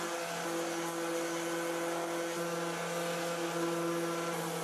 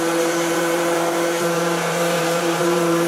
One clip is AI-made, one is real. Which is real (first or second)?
first